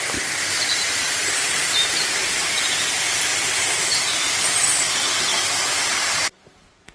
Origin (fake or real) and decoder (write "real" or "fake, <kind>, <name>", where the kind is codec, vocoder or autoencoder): real